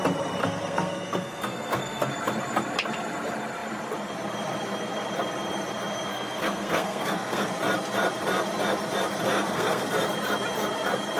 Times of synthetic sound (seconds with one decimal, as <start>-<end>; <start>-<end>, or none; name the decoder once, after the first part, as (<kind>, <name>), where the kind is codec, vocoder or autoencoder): 0.4-2.1 (codec, SNAC); 6.1-7.5; 9.3-9.9